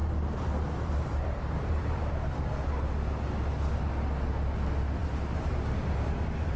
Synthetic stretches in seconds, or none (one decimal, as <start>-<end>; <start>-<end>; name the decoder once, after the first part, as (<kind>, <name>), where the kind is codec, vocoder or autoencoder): 0.0-2.4 (vocoder, BigVGAN v2)